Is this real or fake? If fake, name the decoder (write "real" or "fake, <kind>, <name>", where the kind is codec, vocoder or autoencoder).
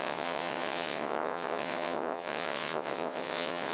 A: fake, vocoder, WaveNeXt